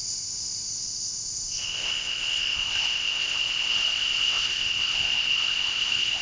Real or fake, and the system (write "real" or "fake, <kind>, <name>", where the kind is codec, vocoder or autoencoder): fake, codec, ZipCodec